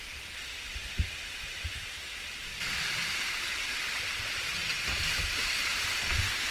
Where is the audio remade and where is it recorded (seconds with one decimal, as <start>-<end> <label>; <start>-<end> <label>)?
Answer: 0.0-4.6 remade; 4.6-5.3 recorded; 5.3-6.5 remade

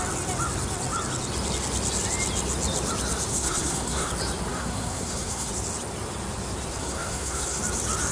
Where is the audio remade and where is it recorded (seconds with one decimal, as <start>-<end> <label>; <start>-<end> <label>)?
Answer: 0.0-3.3 recorded; 3.3-4.1 remade; 4.1-4.5 recorded; 4.5-5.5 remade; 5.5-6.8 recorded; 6.8-7.6 remade; 7.6-8.1 recorded

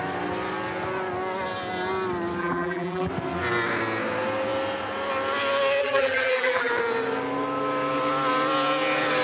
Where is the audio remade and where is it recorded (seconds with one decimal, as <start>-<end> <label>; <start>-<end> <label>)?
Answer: 0.0-2.4 recorded; 2.4-3.1 remade; 3.1-5.8 recorded; 5.8-6.7 remade; 6.7-9.2 recorded